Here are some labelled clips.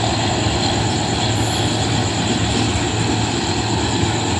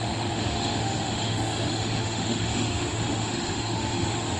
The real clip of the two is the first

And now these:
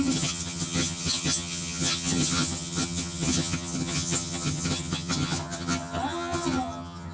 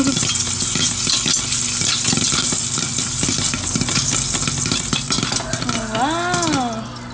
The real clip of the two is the second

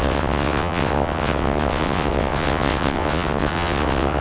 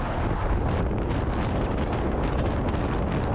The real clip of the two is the second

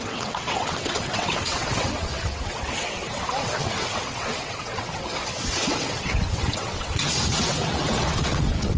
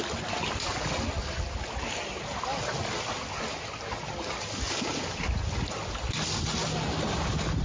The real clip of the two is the second